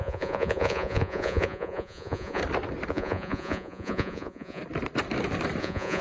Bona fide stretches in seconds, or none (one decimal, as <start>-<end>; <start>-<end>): 2.4-2.9; 4.6-5.6